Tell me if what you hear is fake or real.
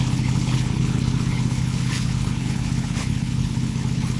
fake